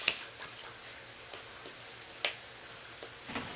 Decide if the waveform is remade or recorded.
recorded